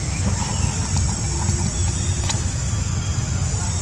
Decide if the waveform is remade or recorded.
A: remade